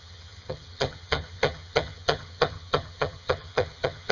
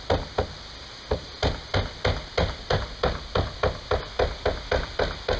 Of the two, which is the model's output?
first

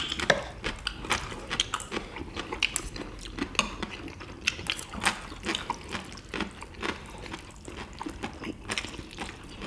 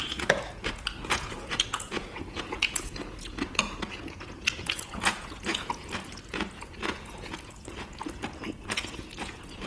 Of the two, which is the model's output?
second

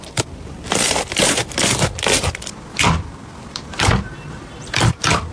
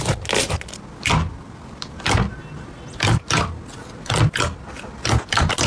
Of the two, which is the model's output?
first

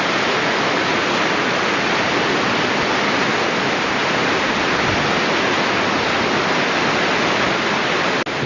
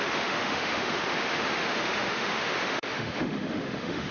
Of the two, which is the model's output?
second